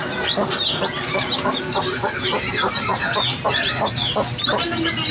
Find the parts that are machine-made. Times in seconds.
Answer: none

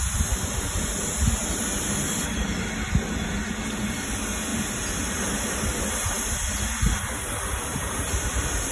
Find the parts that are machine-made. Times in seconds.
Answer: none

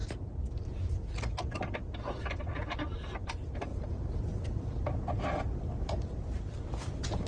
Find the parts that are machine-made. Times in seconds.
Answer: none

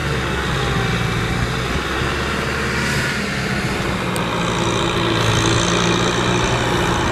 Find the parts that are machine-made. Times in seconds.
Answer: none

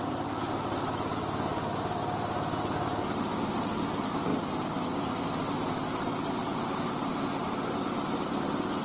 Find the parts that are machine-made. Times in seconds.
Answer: none

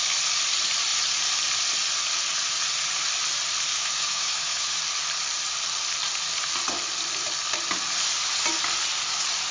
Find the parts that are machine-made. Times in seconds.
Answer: 3.7-4.8 (autoencoder, DAC-VAE)

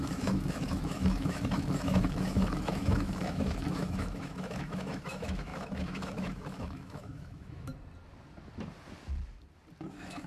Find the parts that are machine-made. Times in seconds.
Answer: 0.0-7.7 (autoencoder, DAC-VAE); 9.9-10.3